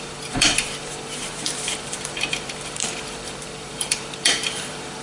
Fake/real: fake